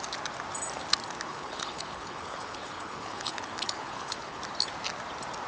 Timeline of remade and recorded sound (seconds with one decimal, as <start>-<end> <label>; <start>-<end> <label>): 0.0-1.3 recorded; 1.3-4.4 remade; 4.4-5.5 recorded